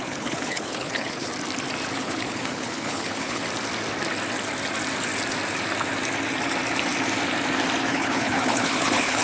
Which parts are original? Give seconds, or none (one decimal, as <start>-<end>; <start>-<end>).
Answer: 1.3-1.9; 3.4-7.9